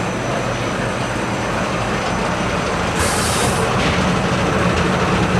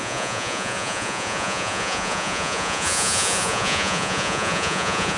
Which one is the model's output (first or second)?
second